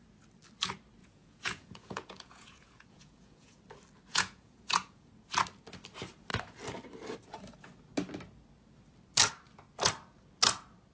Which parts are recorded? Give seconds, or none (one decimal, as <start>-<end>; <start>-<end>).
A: 0.0-1.0; 3.6-4.1; 5.1-10.9